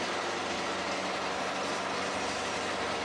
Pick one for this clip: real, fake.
real